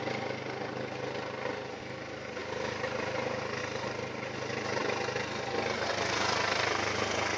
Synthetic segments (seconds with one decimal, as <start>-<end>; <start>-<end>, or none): none